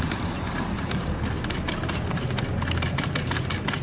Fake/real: fake